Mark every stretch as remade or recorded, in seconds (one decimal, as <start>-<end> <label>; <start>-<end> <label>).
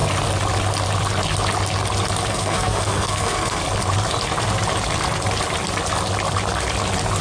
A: 0.0-2.3 recorded; 2.3-3.6 remade; 3.6-7.2 recorded